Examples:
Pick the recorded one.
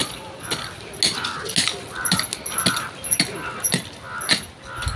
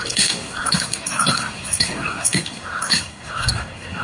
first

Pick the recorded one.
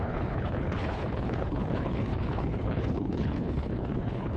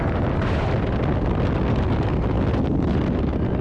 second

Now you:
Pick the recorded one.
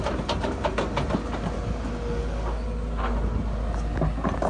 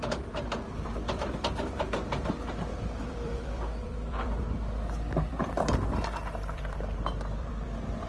first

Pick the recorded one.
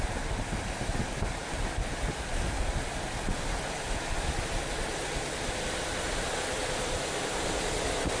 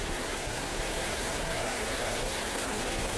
first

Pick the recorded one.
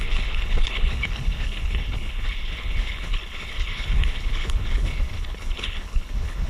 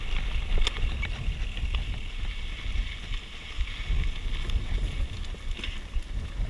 second